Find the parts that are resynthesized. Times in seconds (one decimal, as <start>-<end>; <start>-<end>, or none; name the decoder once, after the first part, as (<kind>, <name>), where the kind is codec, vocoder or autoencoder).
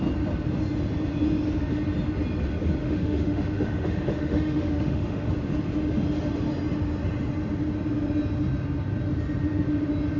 2.8-5.3 (autoencoder, DAC-VAE)